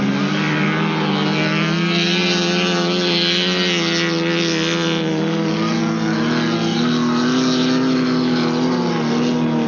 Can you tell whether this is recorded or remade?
recorded